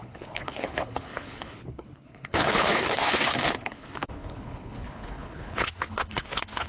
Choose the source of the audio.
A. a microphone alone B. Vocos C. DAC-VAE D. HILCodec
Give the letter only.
D